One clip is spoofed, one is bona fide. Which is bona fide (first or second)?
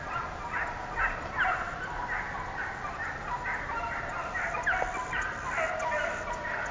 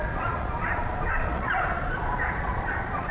first